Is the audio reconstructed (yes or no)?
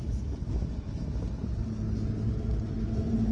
no